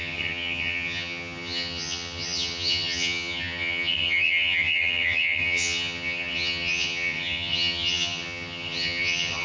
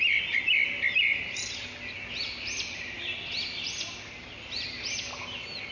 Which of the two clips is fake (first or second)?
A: first